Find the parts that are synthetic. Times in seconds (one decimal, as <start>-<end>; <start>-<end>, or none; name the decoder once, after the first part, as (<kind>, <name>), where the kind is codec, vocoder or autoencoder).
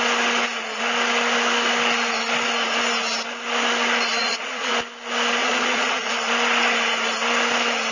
4.2-4.7 (vocoder, Vocos); 5.4-6.1